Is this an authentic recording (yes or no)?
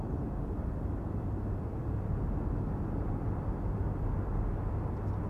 yes